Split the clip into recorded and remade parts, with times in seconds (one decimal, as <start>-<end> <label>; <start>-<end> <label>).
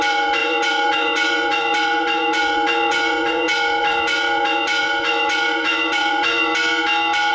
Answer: 0.0-6.5 remade; 6.5-7.3 recorded